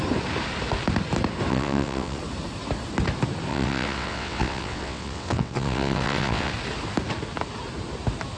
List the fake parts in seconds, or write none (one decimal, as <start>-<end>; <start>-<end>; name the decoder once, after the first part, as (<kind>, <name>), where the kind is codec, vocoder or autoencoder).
1.5-2.2 (vocoder, WaveNeXt); 3.5-6.5